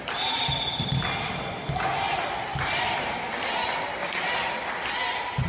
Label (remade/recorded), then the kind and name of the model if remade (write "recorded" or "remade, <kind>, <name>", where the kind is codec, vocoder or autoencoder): recorded